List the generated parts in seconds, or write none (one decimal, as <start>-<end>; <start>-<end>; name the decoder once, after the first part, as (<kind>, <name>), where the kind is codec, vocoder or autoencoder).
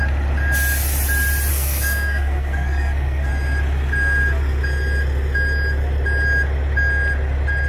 1.5-3.3 (codec, SNAC)